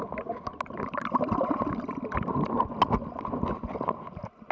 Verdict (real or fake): real